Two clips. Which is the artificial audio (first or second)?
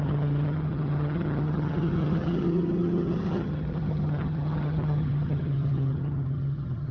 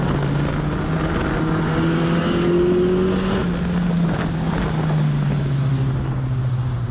first